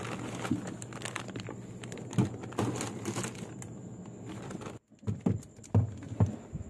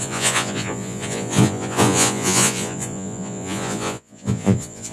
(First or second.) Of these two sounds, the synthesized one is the second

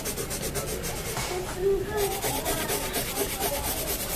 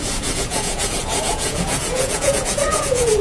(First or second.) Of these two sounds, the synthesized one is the second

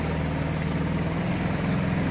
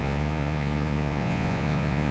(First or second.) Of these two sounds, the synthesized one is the second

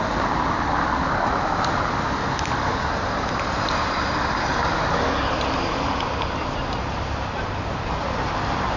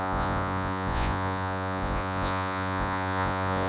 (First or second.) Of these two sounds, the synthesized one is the second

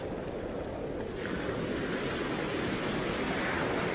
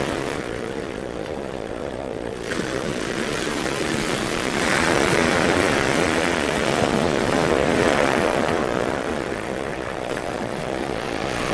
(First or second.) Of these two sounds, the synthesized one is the second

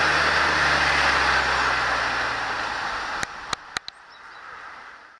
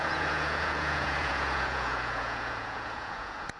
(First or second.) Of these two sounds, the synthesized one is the second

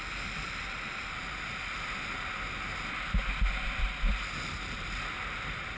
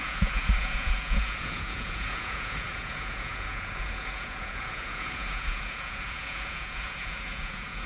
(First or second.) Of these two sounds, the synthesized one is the second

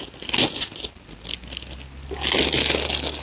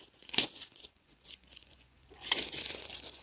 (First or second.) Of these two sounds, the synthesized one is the second